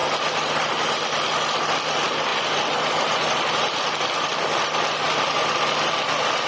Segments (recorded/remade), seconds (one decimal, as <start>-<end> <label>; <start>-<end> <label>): 0.0-0.8 remade; 0.8-2.3 recorded; 2.3-5.6 remade; 5.6-6.5 recorded